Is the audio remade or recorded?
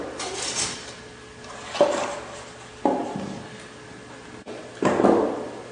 recorded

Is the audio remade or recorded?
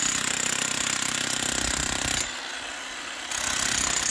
recorded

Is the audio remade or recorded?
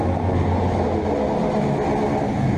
recorded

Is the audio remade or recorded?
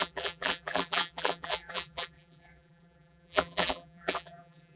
remade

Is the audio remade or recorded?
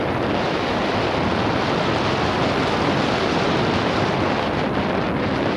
recorded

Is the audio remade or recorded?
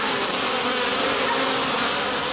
recorded